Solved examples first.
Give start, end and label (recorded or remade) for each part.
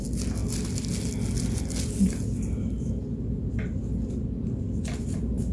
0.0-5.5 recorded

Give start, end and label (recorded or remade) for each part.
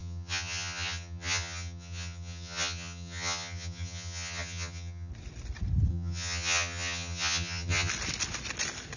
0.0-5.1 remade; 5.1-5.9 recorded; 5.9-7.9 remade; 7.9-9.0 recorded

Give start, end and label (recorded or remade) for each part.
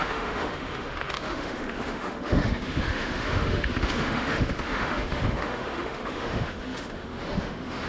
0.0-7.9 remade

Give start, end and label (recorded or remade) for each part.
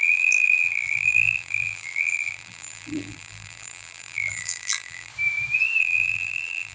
0.0-5.1 remade; 5.1-5.8 recorded; 5.8-6.7 remade